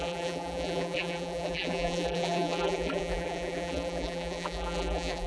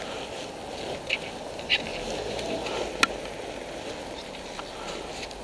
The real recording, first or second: second